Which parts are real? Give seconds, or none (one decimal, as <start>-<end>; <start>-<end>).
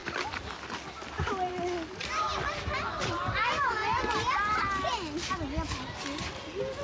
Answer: 0.0-6.8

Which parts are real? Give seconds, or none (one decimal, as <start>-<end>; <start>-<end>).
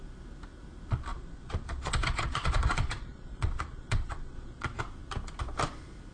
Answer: 0.0-1.1; 4.8-6.1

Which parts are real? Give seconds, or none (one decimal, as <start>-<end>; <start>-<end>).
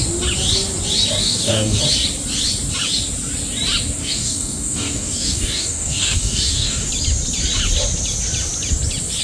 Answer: 0.0-1.2; 1.8-4.0; 6.9-9.2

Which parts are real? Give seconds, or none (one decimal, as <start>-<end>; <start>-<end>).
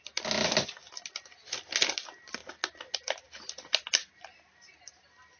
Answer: 0.0-5.4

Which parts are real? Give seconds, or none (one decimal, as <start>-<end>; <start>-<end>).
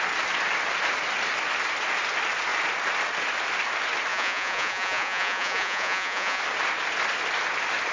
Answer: 0.0-4.1; 6.4-7.9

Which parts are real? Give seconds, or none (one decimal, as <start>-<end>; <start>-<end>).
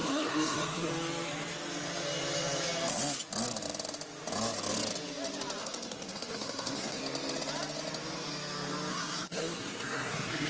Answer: 0.9-5.6; 7.0-8.9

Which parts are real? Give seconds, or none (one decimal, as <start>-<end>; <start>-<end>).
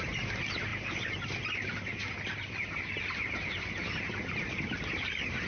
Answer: 0.0-5.5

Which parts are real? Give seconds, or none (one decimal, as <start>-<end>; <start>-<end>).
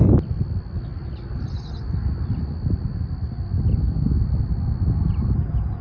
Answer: 0.0-5.8